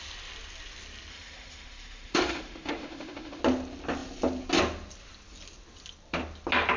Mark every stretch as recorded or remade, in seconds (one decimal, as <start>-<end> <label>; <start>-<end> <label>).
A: 0.0-1.1 recorded; 1.1-3.4 remade; 3.4-6.8 recorded

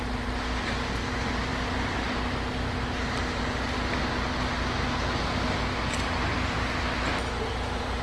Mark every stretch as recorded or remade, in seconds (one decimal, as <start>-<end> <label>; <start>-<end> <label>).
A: 0.0-8.0 recorded

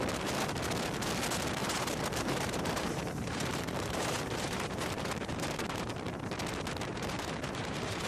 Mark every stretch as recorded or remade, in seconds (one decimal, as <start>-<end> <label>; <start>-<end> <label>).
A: 0.0-1.6 recorded; 1.6-6.2 remade; 6.2-6.9 recorded; 6.9-8.1 remade

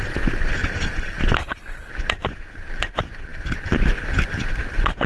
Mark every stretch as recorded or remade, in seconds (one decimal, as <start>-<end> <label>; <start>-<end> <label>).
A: 0.0-1.4 recorded; 1.4-1.9 remade; 1.9-5.1 recorded

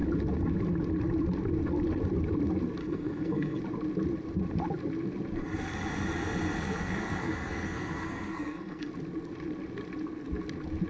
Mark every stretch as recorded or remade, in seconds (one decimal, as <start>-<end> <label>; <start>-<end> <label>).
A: 0.0-2.8 recorded; 2.8-3.6 remade; 3.6-6.6 recorded; 6.6-8.9 remade; 8.9-10.9 recorded

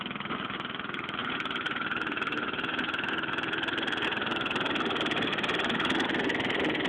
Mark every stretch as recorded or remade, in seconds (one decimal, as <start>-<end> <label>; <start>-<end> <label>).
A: 0.0-6.9 recorded

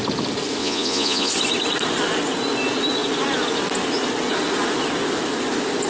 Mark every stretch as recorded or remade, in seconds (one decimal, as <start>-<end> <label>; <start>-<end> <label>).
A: 0.0-0.6 recorded; 0.6-1.3 remade; 1.3-5.9 recorded